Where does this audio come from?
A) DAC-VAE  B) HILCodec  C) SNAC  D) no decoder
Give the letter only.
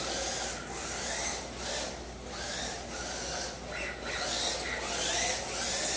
D